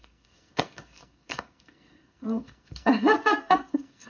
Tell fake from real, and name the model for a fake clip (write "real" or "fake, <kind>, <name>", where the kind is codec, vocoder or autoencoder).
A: fake, codec, SNAC